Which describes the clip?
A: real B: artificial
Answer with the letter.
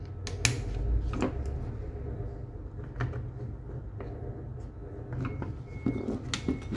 A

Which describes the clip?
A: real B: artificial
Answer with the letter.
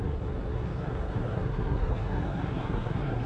B